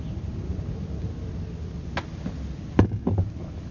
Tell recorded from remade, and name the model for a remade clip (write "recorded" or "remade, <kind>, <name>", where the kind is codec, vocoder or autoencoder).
recorded